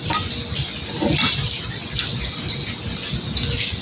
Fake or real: real